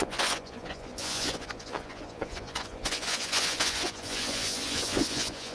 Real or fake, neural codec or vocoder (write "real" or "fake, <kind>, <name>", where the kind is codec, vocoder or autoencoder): fake, vocoder, Vocos